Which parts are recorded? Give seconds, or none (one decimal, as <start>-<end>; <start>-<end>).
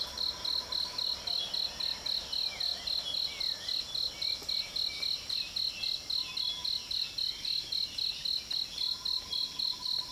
0.0-10.1